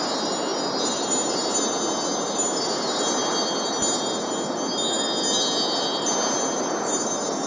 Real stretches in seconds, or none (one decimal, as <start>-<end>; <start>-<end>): 0.0-7.5